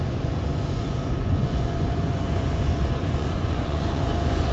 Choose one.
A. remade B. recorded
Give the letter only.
A